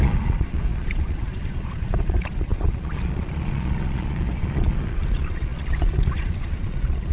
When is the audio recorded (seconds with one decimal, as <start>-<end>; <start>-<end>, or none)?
none